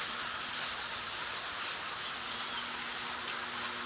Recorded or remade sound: recorded